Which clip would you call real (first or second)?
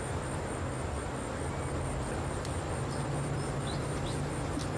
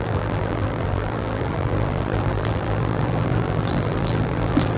first